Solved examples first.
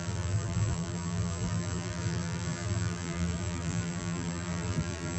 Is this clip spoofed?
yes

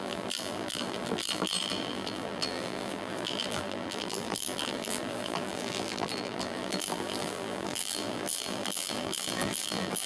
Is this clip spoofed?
yes